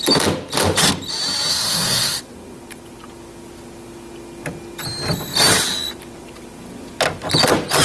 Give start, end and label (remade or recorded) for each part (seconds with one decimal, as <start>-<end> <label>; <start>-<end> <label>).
0.0-1.5 recorded; 1.5-2.2 remade; 2.2-7.8 recorded